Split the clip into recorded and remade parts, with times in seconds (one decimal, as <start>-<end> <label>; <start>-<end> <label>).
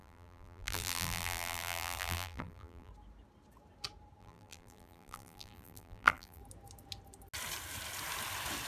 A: 0.0-2.9 remade; 2.9-4.2 recorded; 4.2-6.4 remade; 6.4-8.7 recorded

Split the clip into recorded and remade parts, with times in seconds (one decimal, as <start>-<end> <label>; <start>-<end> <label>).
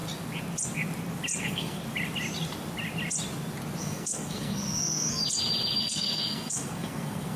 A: 0.0-1.4 recorded; 1.4-1.8 remade; 1.8-3.8 recorded; 3.8-5.2 remade; 5.2-5.8 recorded; 5.8-7.4 remade